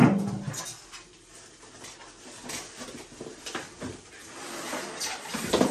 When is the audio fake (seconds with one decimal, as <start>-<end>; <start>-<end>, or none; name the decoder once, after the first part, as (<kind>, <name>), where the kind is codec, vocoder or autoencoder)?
none